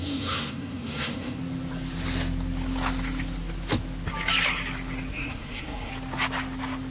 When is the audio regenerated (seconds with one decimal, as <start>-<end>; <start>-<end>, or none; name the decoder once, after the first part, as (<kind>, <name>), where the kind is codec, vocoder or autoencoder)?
0.0-1.4 (codec, SNAC); 5.1-5.9